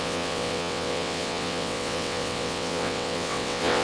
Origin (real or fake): fake